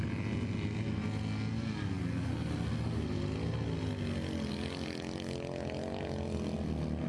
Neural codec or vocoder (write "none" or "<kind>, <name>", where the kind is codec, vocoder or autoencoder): none